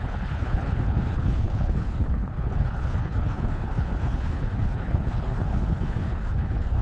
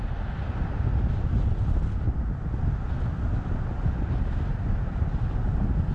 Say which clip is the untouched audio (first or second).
second